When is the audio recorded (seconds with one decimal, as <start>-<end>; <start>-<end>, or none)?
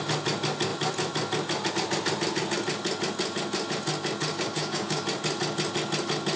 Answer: 0.0-4.3; 5.0-6.4